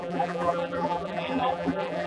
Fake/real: fake